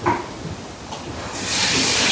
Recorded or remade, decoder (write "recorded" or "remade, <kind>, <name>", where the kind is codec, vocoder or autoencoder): recorded